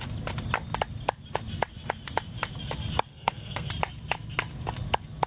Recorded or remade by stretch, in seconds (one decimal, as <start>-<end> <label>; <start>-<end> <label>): 0.0-3.1 recorded; 3.1-3.7 remade; 3.7-5.3 recorded